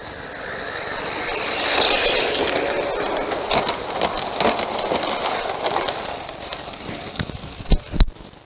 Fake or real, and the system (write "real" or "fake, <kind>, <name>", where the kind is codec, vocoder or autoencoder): real